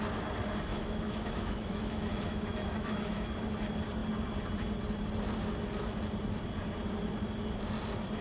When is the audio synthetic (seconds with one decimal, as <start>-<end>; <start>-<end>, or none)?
0.7-3.3